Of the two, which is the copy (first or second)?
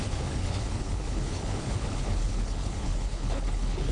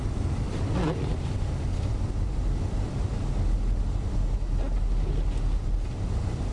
first